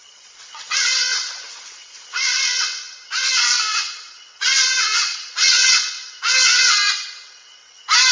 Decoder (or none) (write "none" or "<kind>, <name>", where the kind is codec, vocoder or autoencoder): vocoder, WaveNeXt